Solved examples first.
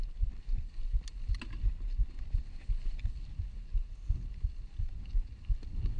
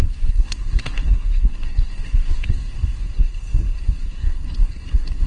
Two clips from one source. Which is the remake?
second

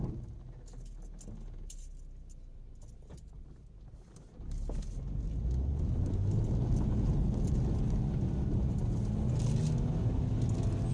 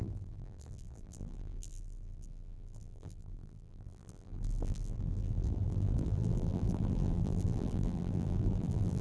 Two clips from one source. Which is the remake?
second